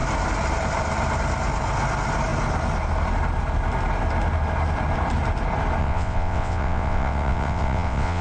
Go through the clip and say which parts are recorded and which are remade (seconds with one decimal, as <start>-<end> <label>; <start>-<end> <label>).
0.0-5.8 recorded; 5.8-8.2 remade